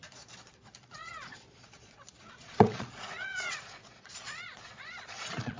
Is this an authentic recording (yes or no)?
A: no